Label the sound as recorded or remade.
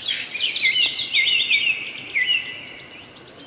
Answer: recorded